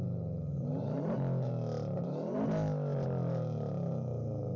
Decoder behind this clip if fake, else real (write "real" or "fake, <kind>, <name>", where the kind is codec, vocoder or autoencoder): real